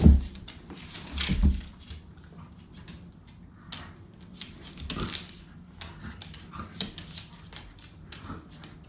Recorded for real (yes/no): yes